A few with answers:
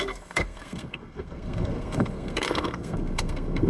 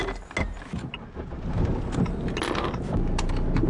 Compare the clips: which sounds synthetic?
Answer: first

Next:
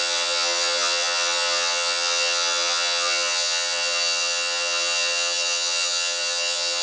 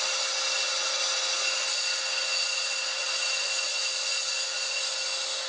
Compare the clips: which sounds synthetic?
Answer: first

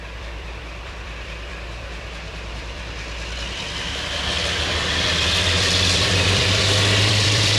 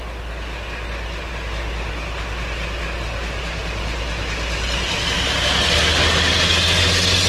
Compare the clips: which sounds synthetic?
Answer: first